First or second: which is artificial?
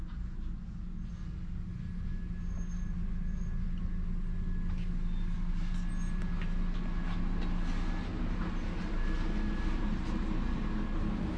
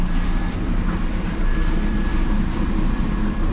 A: second